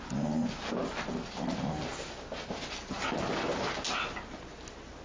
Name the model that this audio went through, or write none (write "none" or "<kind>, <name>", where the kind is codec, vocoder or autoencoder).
none